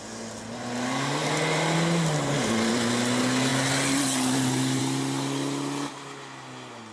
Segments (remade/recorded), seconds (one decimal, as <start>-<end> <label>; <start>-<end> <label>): 0.0-6.9 recorded